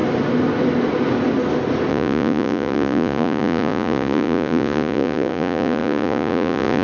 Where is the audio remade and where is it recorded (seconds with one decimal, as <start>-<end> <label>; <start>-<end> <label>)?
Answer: 0.0-1.9 recorded; 1.9-6.8 remade